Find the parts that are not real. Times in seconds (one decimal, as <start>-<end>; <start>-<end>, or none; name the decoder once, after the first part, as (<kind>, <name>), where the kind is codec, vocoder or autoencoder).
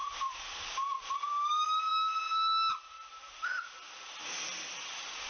0.0-1.1 (vocoder, BigVGAN v2)